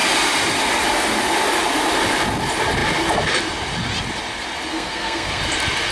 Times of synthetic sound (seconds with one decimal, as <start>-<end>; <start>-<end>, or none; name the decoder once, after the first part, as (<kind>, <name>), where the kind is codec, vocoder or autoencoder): 4.7-5.4 (codec, SNAC)